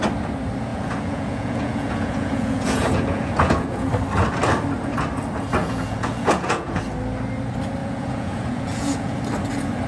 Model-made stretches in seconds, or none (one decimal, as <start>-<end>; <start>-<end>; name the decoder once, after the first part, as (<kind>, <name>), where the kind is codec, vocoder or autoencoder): 0.7-3.9 (vocoder, Vocos); 5.6-6.8; 7.8-9.2